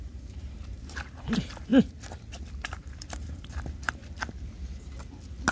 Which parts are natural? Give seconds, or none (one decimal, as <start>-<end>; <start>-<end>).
1.7-2.7; 4.0-5.5

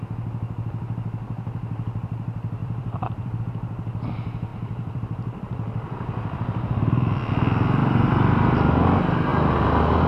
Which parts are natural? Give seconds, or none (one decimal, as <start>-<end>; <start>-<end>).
0.0-2.6; 3.4-4.5; 7.3-7.8; 8.7-10.1

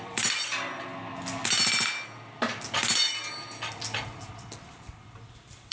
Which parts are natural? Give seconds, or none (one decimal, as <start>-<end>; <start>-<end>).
0.9-4.3